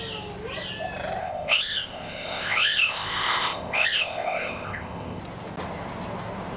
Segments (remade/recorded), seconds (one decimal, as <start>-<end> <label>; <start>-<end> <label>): 0.0-1.2 recorded; 1.2-5.2 remade; 5.2-6.6 recorded